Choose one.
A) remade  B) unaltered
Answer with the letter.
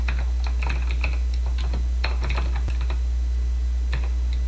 B